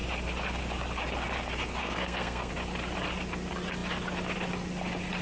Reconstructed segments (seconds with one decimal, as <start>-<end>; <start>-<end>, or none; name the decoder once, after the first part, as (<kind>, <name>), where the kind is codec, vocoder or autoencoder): 1.8-2.5 (codec, SNAC)